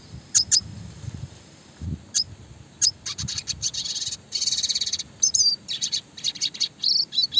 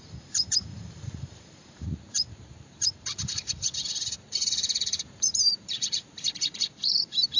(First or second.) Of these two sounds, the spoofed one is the second